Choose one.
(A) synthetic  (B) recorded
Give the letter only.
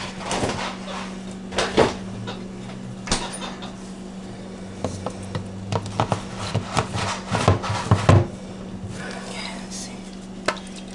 B